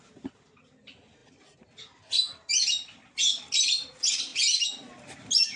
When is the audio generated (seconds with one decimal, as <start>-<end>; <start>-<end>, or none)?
none